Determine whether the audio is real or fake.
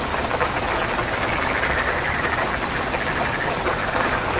real